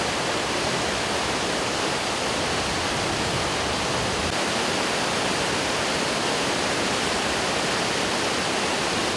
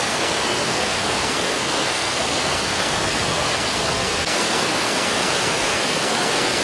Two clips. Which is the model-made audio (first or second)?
second